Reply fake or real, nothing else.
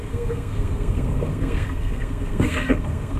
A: fake